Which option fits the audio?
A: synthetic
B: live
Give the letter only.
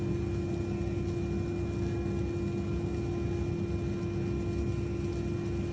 B